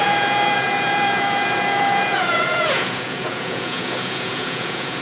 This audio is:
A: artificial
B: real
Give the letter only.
A